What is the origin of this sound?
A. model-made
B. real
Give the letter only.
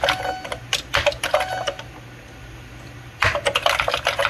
B